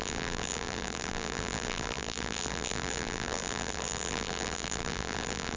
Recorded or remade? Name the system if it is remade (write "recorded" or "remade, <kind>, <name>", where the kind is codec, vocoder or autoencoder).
remade, vocoder, BigVGAN v2